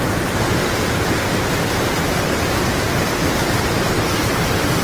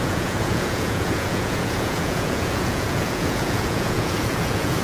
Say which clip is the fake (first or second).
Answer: second